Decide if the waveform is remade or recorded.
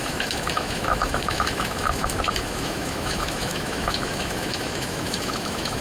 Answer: remade